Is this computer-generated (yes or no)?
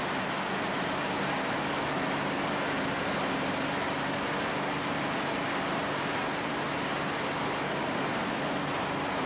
no